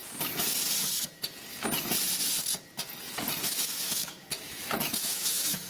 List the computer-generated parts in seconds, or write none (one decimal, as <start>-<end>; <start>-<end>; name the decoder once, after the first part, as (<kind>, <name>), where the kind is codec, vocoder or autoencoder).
3.4-5.7 (autoencoder, DAC-VAE)